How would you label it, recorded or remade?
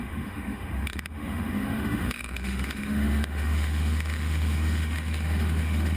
remade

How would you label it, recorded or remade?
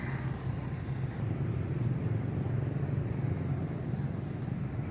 recorded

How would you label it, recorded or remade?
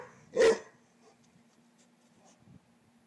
recorded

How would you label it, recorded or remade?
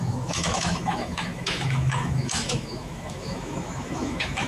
remade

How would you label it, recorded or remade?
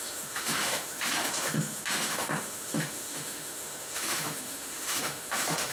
remade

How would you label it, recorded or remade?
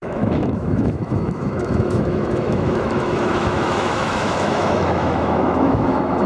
remade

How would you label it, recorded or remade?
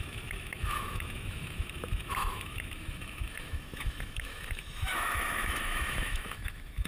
remade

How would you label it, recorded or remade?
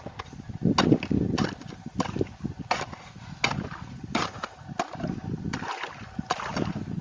recorded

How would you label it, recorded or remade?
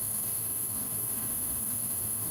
remade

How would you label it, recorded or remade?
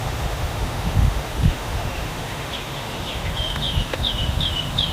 remade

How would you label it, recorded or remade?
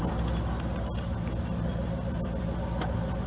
recorded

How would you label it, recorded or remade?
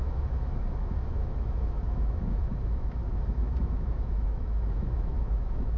remade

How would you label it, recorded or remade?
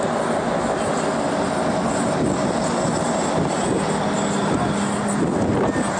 recorded